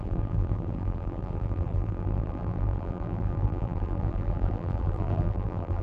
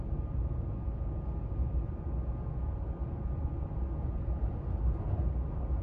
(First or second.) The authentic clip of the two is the second